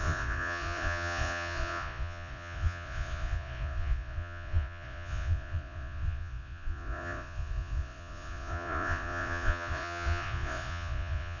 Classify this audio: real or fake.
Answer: fake